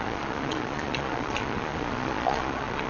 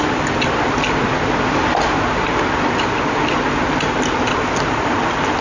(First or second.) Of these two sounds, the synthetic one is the first